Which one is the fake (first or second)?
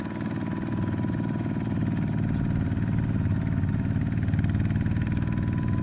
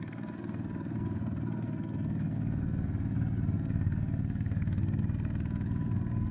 second